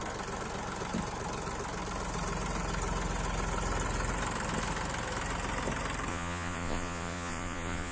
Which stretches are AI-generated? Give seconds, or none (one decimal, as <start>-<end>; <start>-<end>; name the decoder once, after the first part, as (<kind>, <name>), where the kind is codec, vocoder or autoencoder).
6.1-7.9 (vocoder, Vocos)